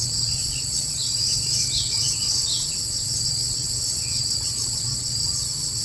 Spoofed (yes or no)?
yes